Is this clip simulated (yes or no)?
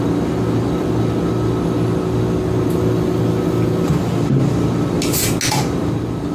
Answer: no